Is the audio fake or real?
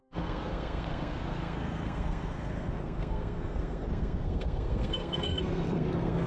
fake